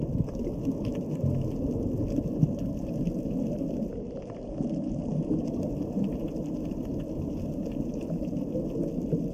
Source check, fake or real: real